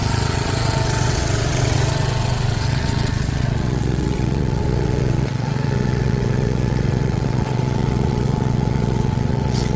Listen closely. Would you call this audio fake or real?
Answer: fake